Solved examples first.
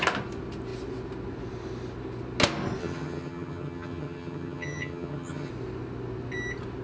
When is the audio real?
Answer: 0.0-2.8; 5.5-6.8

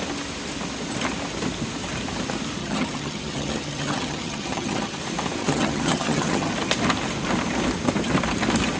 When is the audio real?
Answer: 0.0-2.6; 5.0-5.4; 6.5-8.8